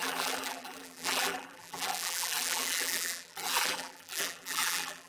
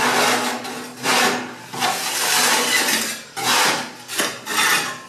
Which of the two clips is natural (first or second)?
second